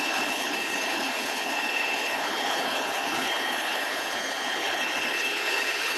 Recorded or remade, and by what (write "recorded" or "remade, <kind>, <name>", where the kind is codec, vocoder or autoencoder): remade, codec, HILCodec